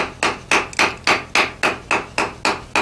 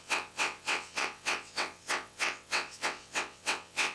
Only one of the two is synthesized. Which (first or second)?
second